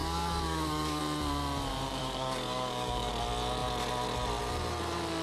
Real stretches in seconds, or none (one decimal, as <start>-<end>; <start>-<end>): 1.0-2.0; 3.1-5.2